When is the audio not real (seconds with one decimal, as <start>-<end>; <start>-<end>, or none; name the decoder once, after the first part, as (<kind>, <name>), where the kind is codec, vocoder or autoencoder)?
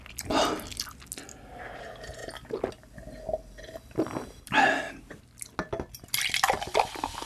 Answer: none